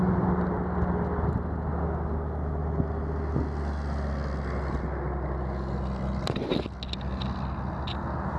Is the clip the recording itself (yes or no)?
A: yes